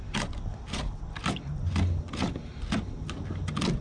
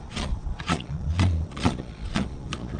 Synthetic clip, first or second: second